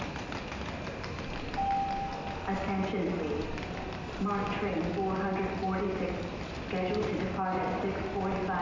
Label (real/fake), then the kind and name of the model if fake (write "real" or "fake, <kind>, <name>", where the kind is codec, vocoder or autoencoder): real